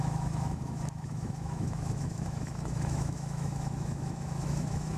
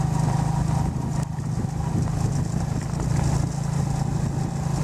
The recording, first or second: second